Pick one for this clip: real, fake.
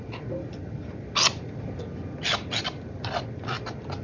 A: real